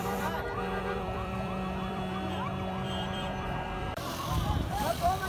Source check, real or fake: fake